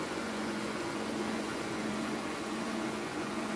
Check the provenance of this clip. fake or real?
fake